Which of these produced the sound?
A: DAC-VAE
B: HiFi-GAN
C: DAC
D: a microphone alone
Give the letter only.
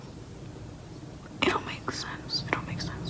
D